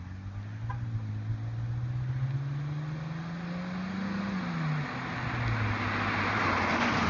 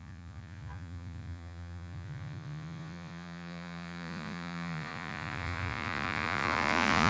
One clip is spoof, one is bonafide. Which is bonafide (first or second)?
first